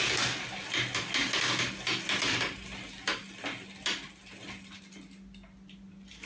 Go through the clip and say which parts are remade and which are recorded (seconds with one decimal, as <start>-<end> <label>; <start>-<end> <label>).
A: 0.0-6.3 recorded